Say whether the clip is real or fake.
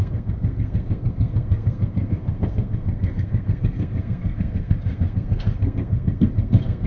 fake